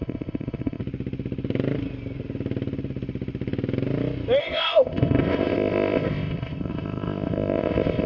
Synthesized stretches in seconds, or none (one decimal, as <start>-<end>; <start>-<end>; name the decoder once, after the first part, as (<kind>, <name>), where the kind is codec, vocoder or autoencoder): 0.0-0.8 (codec, ZipCodec); 4.4-8.1